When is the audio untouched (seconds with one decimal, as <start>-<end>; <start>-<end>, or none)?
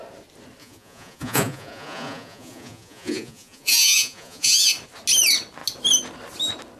0.0-0.6; 4.7-6.8